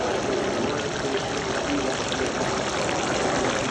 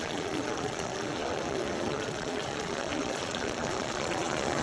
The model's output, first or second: second